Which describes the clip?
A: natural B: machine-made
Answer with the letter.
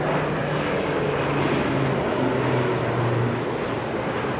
A